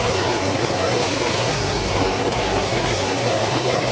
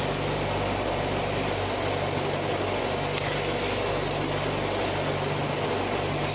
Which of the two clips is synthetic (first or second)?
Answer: first